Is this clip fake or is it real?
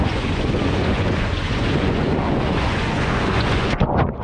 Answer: fake